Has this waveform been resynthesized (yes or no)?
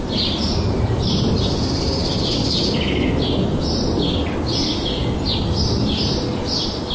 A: no